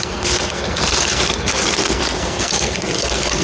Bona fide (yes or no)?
no